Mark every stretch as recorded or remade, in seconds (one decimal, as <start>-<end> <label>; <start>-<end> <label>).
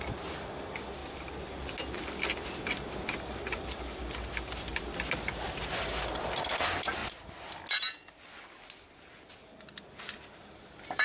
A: 0.0-1.0 remade; 1.0-5.6 recorded; 5.6-7.0 remade; 7.0-10.2 recorded; 10.2-11.0 remade